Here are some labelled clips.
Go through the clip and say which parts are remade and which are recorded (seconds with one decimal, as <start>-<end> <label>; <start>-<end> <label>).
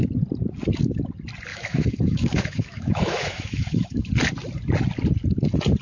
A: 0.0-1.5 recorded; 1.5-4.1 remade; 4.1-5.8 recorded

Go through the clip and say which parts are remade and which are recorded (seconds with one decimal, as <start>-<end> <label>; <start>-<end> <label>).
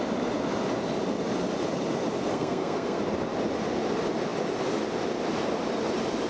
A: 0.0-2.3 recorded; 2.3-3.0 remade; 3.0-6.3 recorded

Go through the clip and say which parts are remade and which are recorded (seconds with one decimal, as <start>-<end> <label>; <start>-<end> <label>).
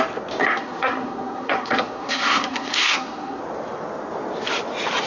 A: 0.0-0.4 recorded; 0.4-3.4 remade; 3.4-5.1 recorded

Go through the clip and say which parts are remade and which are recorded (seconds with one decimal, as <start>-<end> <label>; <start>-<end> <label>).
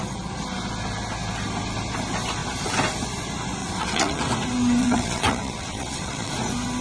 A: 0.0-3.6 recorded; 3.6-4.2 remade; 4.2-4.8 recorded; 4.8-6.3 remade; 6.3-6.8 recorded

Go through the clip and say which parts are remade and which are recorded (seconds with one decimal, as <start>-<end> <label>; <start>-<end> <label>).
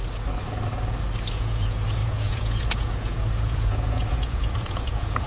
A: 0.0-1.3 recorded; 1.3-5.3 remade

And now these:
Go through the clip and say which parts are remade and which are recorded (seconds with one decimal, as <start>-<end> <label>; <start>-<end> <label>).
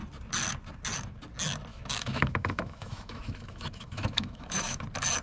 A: 0.0-1.7 recorded; 1.7-4.8 remade; 4.8-5.2 recorded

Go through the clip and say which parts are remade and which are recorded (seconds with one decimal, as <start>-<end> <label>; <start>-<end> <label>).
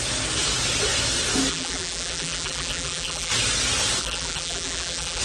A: 0.0-1.5 recorded; 1.5-3.3 remade; 3.3-4.0 recorded; 4.0-5.2 remade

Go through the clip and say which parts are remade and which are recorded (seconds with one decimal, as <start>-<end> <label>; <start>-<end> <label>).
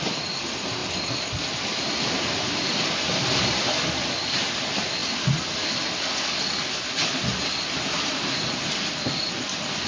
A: 0.0-9.9 recorded